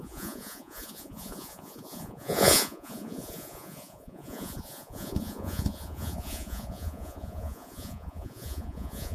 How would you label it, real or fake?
fake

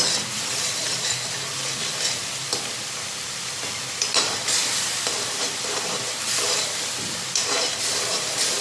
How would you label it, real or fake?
fake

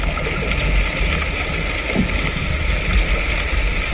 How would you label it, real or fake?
real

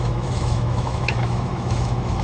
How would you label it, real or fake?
fake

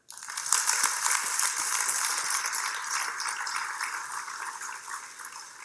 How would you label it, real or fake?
real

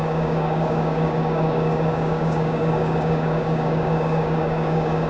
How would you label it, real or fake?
fake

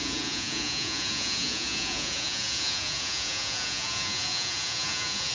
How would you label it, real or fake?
fake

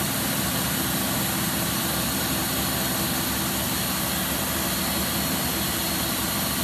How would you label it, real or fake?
real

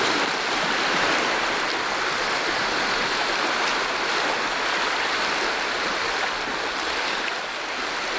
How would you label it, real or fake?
real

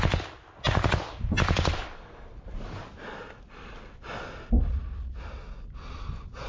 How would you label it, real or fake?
real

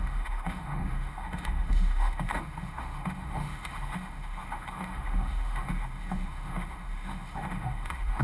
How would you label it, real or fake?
fake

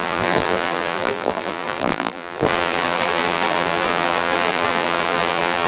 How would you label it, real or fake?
fake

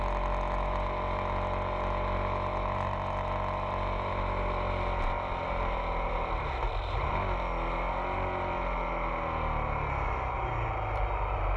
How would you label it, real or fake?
real